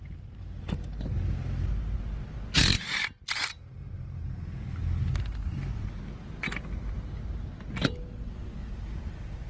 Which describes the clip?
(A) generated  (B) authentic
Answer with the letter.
B